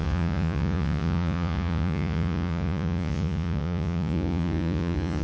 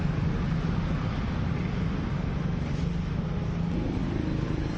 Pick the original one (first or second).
second